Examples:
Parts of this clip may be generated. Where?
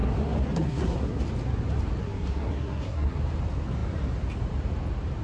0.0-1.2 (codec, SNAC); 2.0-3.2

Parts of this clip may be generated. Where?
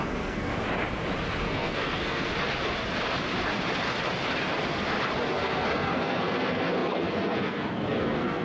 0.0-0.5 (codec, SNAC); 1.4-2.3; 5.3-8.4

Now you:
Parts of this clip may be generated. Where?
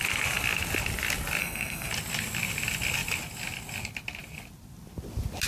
1.4-1.9 (codec, SNAC)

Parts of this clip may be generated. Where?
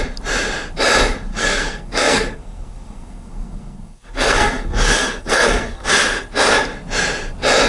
1.3-5.9 (codec, SNAC)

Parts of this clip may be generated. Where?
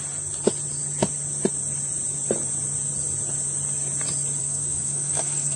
4.4-5.6 (codec, SNAC)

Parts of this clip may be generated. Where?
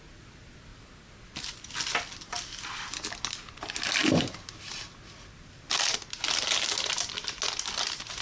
none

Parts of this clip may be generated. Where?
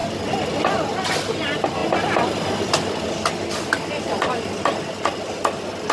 none